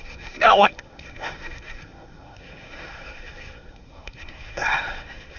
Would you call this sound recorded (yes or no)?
no